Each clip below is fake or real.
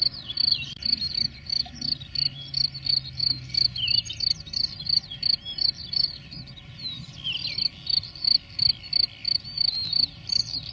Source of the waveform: real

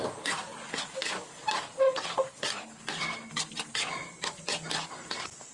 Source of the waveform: real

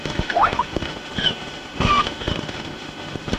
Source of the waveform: fake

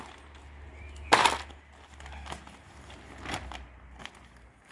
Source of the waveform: real